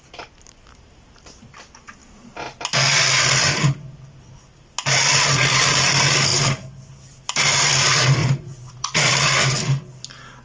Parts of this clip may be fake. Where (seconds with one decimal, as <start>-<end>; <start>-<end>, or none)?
8.2-9.1